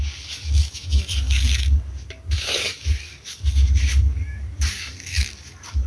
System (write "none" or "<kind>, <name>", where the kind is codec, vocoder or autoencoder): codec, DAC